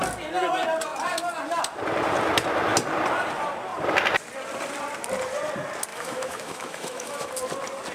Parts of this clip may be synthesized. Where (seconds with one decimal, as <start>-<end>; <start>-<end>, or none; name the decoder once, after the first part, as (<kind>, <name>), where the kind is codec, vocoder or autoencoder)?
5.9-7.3 (autoencoder, DAC-VAE)